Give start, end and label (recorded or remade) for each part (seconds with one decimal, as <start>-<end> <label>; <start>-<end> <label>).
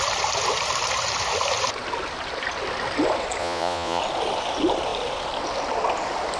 0.0-3.4 recorded; 3.4-4.0 remade; 4.0-6.4 recorded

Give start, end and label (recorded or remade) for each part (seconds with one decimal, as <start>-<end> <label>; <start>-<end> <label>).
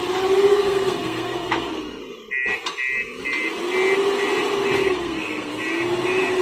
0.0-0.5 recorded; 0.5-2.0 remade; 2.0-4.8 recorded; 4.8-5.5 remade; 5.5-6.4 recorded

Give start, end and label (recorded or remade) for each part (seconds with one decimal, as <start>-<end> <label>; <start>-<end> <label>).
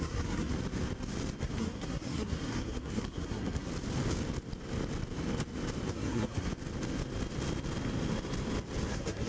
0.0-0.5 remade; 0.5-1.4 recorded; 1.4-3.7 remade; 3.7-5.9 recorded; 5.9-6.5 remade; 6.5-8.9 recorded; 8.9-9.3 remade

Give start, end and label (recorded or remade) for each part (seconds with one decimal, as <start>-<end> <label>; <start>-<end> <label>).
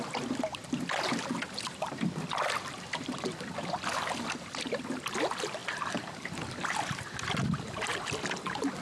0.0-8.8 recorded